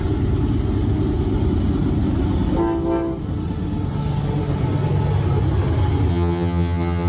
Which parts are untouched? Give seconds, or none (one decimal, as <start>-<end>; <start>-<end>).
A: 0.0-6.1

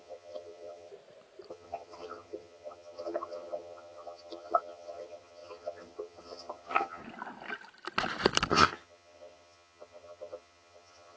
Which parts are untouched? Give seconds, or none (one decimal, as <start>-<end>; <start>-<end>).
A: 0.9-1.5; 7.0-8.5

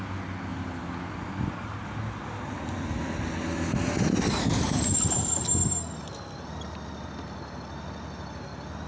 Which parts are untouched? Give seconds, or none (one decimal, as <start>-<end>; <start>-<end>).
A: 0.0-8.9

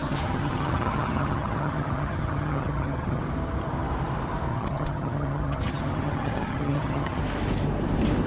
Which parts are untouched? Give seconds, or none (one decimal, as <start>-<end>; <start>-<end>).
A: 3.2-4.5; 7.2-8.3

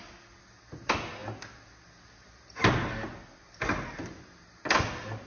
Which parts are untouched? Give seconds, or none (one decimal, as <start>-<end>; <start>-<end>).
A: 0.0-5.3

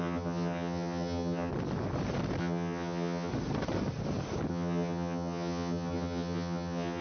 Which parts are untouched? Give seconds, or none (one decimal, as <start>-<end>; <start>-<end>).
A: 1.5-2.4; 3.3-4.5